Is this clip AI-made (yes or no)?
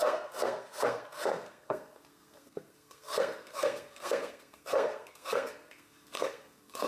yes